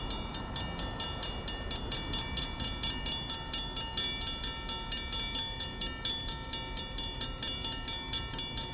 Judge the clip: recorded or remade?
recorded